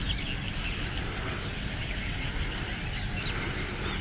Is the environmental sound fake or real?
real